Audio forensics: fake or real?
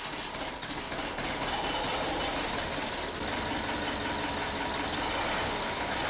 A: real